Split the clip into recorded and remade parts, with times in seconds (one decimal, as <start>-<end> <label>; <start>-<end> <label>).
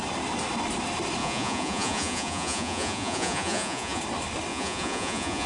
0.0-1.2 recorded; 1.2-4.0 remade; 4.0-4.5 recorded; 4.5-5.5 remade